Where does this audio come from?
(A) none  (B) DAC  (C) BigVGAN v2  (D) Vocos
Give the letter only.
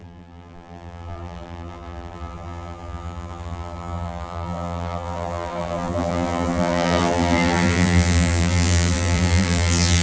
C